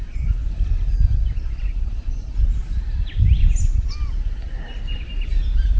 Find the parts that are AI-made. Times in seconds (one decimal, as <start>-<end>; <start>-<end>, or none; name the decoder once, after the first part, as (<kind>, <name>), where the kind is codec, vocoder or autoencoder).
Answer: none